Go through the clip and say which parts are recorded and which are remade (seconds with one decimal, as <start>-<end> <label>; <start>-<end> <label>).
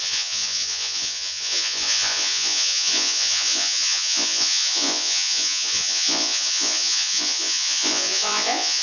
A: 0.0-8.8 remade